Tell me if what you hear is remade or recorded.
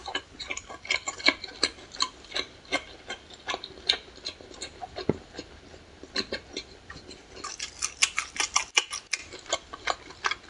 recorded